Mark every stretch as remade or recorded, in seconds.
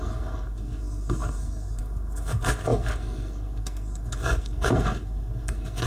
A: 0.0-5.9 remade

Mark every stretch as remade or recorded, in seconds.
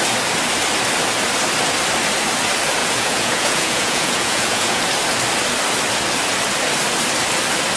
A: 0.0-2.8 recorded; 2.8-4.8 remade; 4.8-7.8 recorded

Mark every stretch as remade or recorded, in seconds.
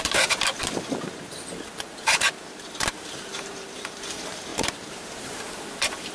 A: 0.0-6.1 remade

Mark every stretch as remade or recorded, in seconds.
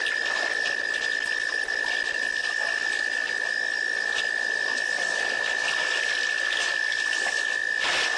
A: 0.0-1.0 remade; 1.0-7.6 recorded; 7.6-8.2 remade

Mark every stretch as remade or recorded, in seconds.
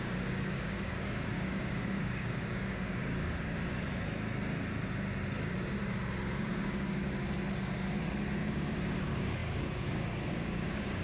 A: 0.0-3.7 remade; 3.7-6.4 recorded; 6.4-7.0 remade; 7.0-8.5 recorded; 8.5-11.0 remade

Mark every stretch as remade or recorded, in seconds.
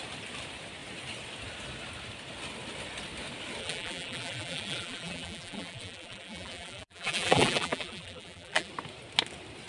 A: 0.0-3.6 recorded; 3.6-8.7 remade; 8.7-9.7 recorded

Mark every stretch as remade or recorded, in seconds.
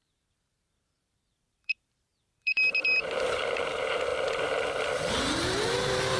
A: 0.0-4.1 remade; 4.1-5.1 recorded; 5.1-6.2 remade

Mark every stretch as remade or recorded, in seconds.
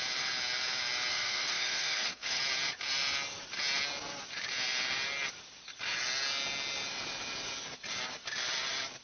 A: 0.0-1.1 recorded; 1.1-2.4 remade; 2.4-9.0 recorded